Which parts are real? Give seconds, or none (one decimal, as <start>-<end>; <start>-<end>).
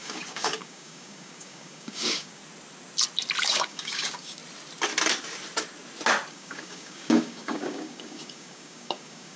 2.4-3.4; 4.4-6.3